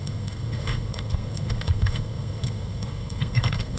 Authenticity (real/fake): fake